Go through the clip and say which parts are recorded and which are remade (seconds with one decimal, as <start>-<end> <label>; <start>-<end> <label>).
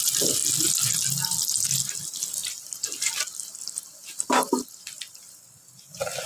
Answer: 0.0-2.4 recorded; 2.4-3.1 remade; 3.1-6.3 recorded